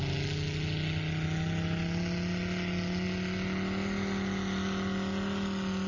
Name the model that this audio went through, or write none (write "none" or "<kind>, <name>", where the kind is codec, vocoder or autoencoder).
none